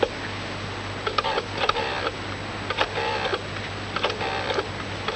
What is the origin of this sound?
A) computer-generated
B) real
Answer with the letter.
B